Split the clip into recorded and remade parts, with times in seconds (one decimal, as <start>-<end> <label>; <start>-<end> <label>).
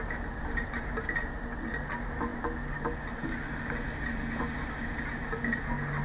0.0-6.0 recorded